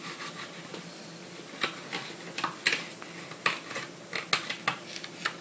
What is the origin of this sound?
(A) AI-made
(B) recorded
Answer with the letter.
B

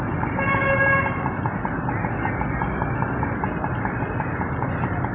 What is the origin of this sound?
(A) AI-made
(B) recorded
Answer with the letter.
B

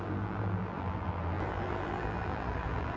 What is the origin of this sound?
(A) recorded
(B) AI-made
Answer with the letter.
B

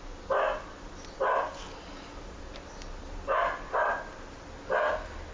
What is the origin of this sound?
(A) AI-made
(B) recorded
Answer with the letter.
B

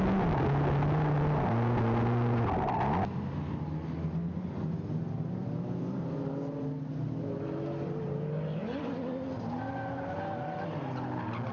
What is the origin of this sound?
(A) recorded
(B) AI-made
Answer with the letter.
A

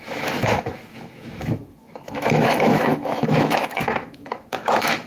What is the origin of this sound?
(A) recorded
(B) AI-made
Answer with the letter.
B